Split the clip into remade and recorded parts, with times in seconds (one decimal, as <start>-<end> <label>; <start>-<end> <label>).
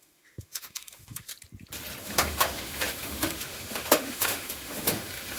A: 0.0-1.3 remade; 1.3-2.0 recorded; 2.0-5.4 remade